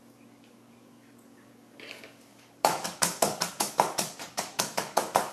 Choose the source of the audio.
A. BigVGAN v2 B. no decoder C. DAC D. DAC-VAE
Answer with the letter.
C